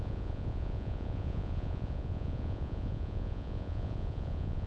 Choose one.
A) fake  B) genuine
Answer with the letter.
A